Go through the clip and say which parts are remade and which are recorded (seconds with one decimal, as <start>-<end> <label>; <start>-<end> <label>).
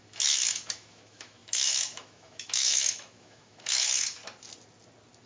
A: 0.0-4.2 remade; 4.2-5.3 recorded